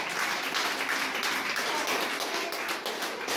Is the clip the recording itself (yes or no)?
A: yes